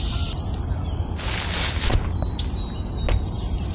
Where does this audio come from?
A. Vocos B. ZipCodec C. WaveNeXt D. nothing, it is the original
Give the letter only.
D